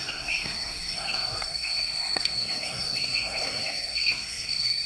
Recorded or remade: remade